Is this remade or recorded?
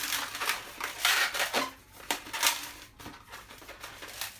recorded